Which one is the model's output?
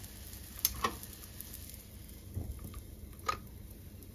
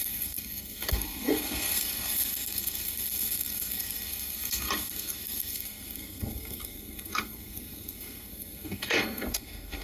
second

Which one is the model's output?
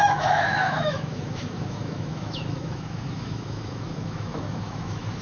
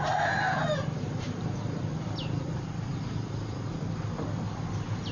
first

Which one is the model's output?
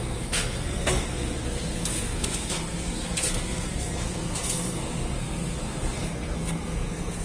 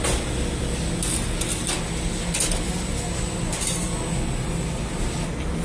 first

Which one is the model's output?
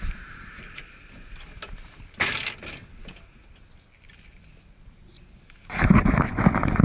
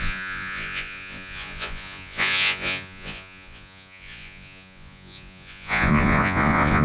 second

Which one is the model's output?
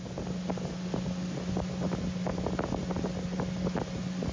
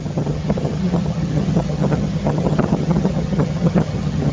second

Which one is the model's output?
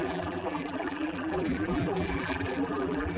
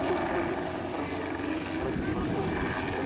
first